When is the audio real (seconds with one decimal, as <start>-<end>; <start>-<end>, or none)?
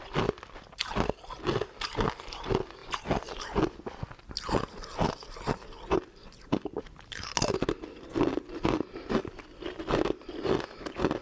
0.0-11.2